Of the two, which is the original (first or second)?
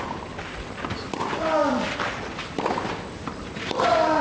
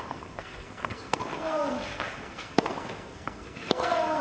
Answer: first